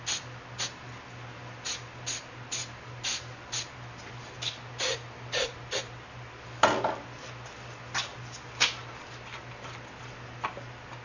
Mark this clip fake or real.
real